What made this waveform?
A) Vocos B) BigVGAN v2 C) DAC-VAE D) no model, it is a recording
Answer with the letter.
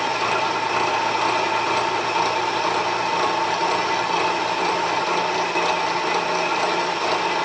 D